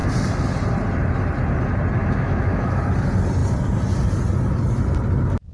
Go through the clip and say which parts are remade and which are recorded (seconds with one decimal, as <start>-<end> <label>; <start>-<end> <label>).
0.0-2.0 recorded; 2.0-2.8 remade; 2.8-5.5 recorded